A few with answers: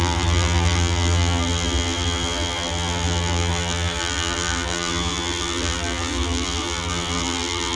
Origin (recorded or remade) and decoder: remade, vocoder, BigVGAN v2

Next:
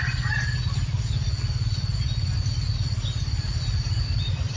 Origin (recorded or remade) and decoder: recorded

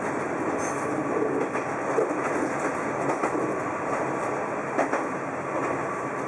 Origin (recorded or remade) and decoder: recorded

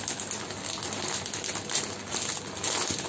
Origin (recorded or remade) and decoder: recorded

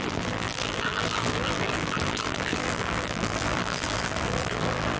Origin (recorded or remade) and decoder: remade, vocoder, BigVGAN v2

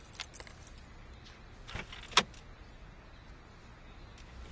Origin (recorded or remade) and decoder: recorded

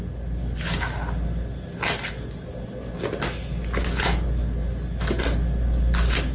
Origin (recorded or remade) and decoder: recorded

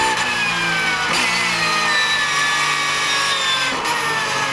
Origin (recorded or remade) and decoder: recorded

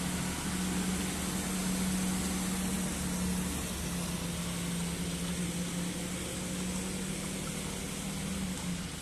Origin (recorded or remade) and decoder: recorded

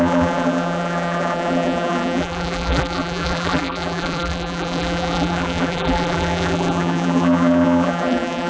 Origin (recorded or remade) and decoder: remade, vocoder, BigVGAN v2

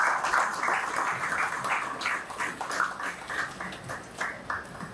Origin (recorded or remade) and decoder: recorded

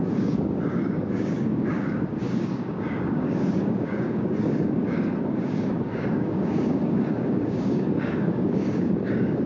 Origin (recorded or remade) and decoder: remade, codec, DAC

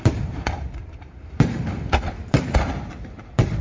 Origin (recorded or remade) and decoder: remade, vocoder, BigVGAN v2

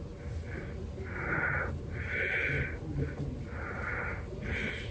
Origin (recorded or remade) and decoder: recorded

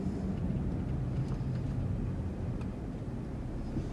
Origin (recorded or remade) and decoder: recorded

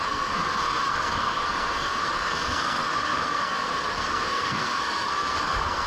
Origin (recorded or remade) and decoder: remade, codec, SNAC